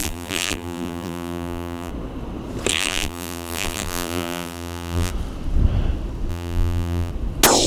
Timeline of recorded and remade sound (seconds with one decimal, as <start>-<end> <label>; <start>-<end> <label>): 0.0-1.9 remade; 1.9-2.7 recorded; 2.7-5.1 remade; 5.1-6.3 recorded; 6.3-7.1 remade; 7.1-7.7 recorded